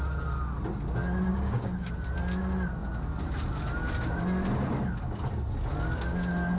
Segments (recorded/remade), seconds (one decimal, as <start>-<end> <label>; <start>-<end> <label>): 0.0-1.3 recorded; 1.3-1.9 remade; 1.9-6.6 recorded